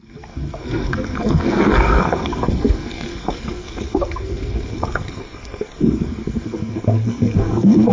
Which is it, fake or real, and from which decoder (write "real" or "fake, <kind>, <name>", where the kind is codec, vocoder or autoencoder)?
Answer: fake, codec, SNAC